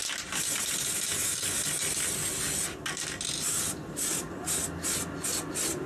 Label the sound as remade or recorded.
recorded